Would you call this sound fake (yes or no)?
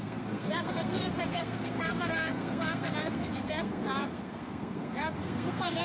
yes